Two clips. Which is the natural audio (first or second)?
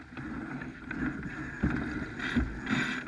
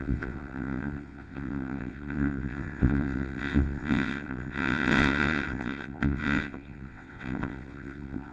first